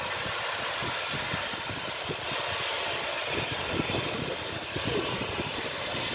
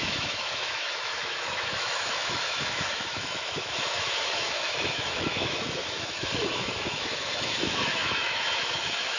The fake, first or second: second